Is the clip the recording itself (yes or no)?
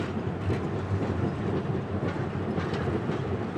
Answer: yes